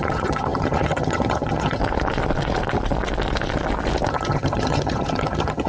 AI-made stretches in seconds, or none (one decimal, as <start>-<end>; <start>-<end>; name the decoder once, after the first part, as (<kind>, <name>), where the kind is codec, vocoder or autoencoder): 0.0-1.8 (vocoder, HiFi-GAN); 4.1-5.7